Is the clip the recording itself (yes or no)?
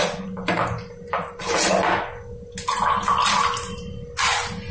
yes